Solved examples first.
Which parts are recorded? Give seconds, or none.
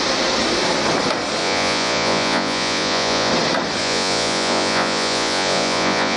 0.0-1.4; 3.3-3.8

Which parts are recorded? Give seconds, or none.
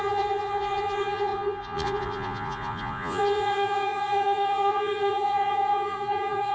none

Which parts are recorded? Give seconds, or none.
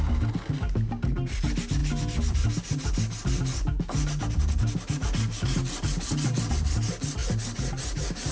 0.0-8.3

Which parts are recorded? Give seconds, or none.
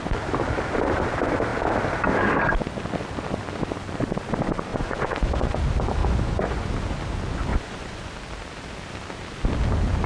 0.0-4.7; 5.6-6.0; 6.7-7.5; 8.1-10.1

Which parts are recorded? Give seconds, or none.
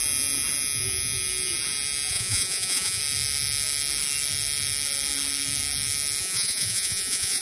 0.0-2.1; 3.0-6.2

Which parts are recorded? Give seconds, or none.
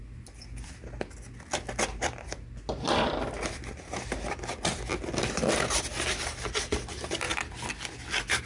0.0-8.5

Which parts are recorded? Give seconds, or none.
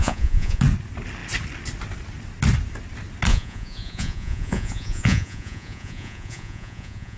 0.6-3.3